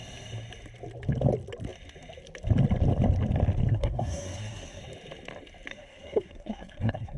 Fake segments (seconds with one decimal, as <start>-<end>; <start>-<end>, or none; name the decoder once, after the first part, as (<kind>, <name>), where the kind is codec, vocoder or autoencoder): 3.7-4.8 (codec, SNAC); 5.7-7.2